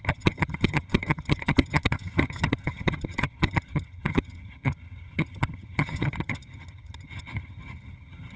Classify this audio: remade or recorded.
remade